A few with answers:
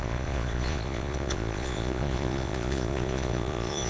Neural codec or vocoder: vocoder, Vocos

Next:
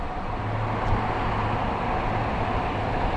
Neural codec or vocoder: none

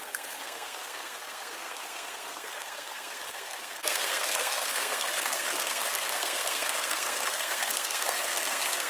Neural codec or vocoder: codec, SNAC